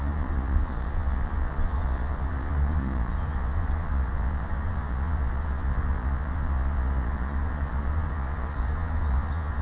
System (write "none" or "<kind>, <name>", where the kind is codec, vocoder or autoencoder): vocoder, Vocos